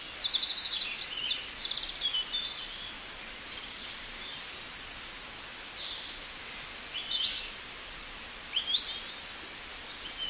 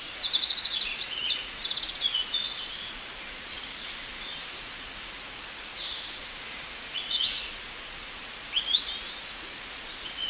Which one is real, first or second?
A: first